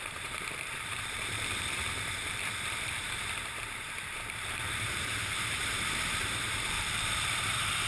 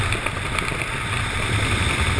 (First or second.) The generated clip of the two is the first